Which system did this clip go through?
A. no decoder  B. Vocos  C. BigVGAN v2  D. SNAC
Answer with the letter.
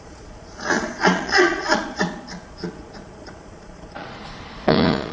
B